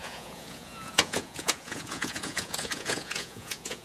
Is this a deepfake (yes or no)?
yes